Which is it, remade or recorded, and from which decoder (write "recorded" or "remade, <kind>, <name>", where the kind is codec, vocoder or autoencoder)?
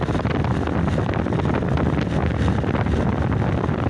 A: recorded